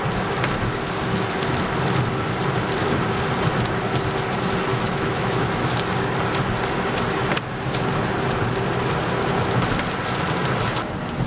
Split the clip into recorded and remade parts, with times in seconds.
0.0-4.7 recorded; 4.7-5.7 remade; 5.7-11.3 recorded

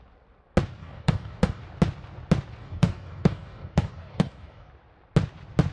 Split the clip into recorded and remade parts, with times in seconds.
0.0-0.8 recorded; 0.8-1.6 remade; 1.6-2.6 recorded; 2.6-4.7 remade; 4.7-5.7 recorded

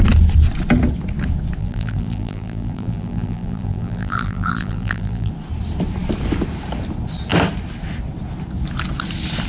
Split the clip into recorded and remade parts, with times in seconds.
0.0-1.6 recorded; 1.6-5.3 remade; 5.3-9.5 recorded